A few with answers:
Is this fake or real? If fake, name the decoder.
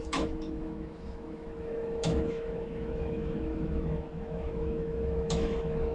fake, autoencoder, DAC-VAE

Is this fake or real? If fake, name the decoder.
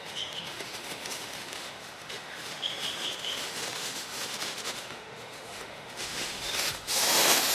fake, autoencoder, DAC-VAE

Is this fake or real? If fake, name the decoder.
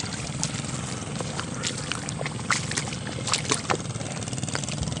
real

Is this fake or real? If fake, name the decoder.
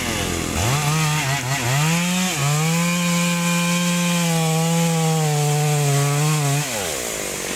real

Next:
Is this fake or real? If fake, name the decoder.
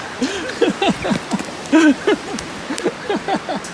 real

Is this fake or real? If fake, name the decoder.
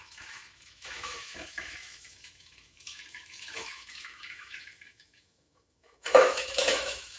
fake, autoencoder, DAC-VAE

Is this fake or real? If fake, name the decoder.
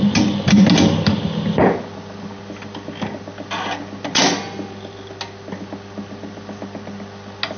real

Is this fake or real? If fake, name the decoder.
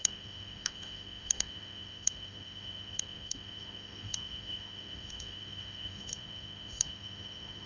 fake, autoencoder, DAC-VAE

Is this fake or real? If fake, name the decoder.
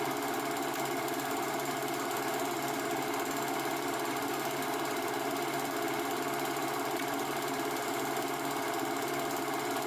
real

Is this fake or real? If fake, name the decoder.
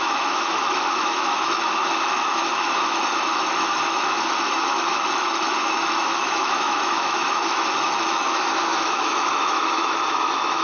fake, autoencoder, DAC-VAE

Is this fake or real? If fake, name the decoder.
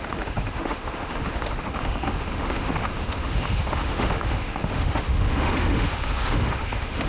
fake, autoencoder, DAC-VAE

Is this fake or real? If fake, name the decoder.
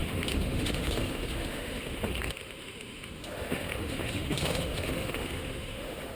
fake, autoencoder, DAC-VAE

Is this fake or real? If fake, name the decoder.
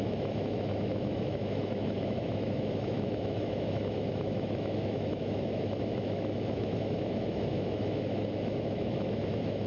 fake, autoencoder, DAC-VAE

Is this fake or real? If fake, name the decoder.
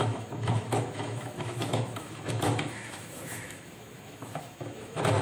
fake, autoencoder, DAC-VAE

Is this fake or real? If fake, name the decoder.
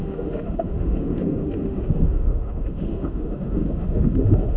fake, autoencoder, DAC-VAE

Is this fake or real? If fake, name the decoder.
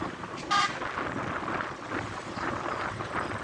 real